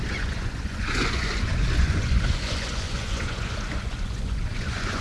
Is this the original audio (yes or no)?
no